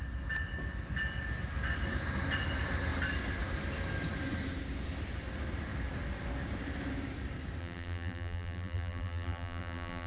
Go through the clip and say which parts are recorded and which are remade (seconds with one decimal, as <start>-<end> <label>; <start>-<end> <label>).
0.0-7.6 recorded; 7.6-10.1 remade